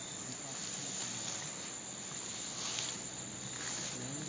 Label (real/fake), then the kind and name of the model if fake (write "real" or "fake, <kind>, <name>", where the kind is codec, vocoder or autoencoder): real